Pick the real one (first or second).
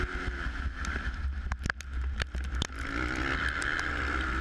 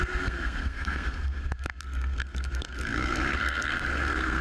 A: first